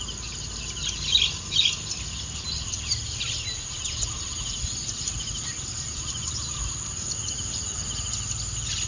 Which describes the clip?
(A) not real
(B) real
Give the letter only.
B